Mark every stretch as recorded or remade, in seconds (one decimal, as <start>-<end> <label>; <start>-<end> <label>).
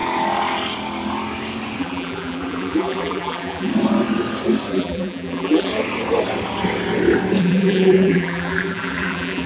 0.0-1.8 recorded; 1.8-3.7 remade; 3.7-4.7 recorded; 4.7-5.7 remade; 5.7-7.4 recorded; 7.4-9.5 remade